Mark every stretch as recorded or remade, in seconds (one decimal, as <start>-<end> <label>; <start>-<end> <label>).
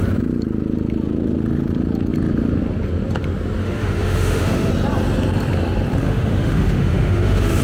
0.0-3.6 recorded; 3.6-4.7 remade; 4.7-6.0 recorded; 6.0-7.6 remade